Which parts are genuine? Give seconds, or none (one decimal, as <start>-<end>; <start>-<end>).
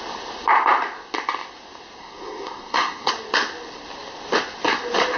0.0-2.0; 3.1-5.2